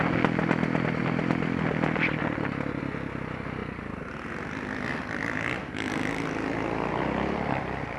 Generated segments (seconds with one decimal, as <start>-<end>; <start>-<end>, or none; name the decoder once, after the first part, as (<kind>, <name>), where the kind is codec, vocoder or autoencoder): none